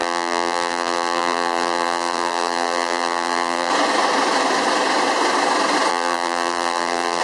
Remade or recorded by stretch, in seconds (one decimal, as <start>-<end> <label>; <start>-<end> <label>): 0.0-3.7 remade; 3.7-5.9 recorded; 5.9-7.2 remade